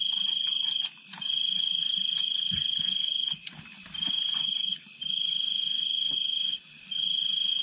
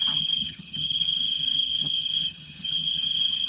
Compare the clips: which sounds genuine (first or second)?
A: first